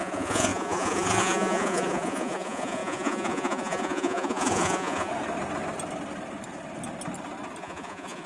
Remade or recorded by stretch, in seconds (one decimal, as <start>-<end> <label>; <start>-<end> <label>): 0.0-5.1 remade; 5.1-7.6 recorded; 7.6-8.3 remade